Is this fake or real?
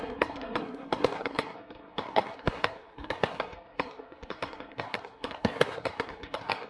fake